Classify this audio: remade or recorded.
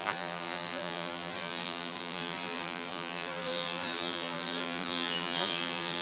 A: remade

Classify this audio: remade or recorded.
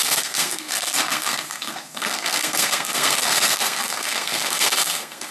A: remade